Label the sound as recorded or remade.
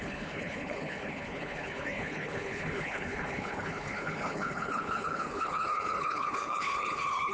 remade